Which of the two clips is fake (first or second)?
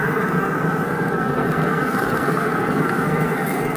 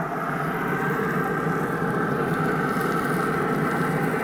first